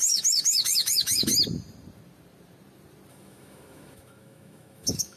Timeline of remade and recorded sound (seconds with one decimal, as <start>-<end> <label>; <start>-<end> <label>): 0.0-1.3 remade; 1.3-3.1 recorded; 3.1-5.2 remade